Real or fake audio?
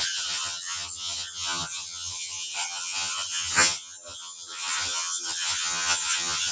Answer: fake